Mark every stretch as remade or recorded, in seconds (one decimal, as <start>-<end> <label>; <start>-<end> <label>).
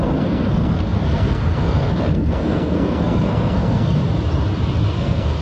0.0-4.0 remade; 4.0-4.9 recorded; 4.9-5.4 remade